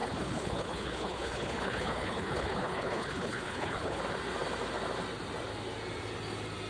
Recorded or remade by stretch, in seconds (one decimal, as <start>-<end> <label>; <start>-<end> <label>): 0.0-4.0 remade; 4.0-6.7 recorded